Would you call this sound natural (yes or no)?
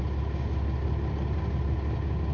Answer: yes